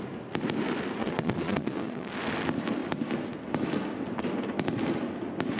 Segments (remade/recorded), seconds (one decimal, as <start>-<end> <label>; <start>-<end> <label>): 0.0-1.0 recorded; 1.0-2.1 remade; 2.1-5.6 recorded